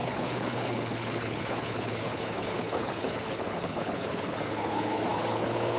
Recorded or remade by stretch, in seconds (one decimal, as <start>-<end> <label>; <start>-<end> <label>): 0.0-5.8 remade